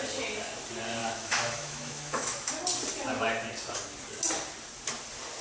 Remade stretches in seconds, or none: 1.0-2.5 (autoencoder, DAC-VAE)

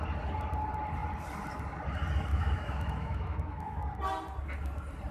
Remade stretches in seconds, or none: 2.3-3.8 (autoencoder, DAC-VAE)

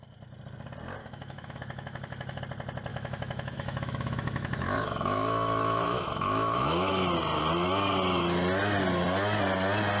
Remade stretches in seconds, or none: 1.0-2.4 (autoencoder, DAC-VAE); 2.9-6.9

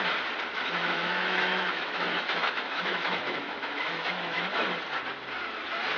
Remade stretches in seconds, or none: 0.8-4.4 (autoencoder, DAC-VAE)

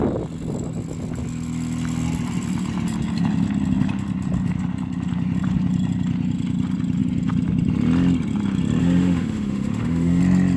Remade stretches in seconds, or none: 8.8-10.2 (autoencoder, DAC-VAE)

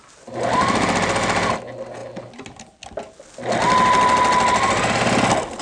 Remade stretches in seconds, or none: none

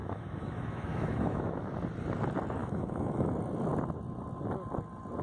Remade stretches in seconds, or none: 0.0-1.7 (autoencoder, DAC-VAE); 2.6-3.3